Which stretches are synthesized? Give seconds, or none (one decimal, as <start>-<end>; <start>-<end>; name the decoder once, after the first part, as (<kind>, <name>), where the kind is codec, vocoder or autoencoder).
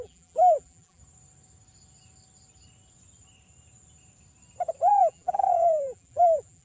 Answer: 0.0-1.0 (vocoder, BigVGAN v2); 4.9-6.6